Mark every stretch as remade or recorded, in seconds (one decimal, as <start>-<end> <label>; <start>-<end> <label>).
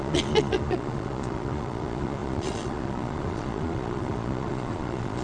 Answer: 0.0-5.2 remade